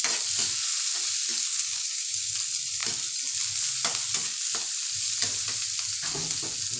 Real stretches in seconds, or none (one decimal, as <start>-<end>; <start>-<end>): 0.0-1.5; 2.3-6.8

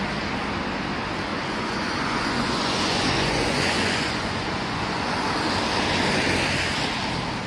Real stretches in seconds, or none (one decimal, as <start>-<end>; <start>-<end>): 0.0-1.3; 5.3-7.5

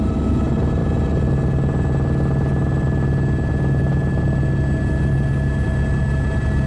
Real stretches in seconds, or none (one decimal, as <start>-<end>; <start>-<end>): 0.0-6.7